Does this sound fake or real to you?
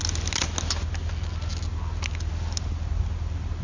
real